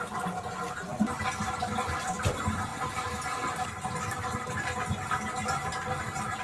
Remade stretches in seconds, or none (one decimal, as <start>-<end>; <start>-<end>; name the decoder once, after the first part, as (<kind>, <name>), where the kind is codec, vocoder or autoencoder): none